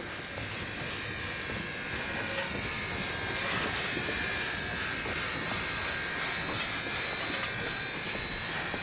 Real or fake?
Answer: real